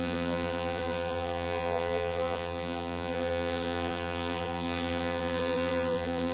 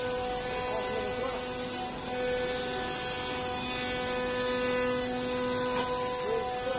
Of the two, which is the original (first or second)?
second